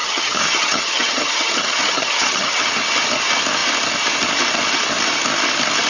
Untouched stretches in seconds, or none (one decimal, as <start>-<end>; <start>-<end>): 2.7-5.9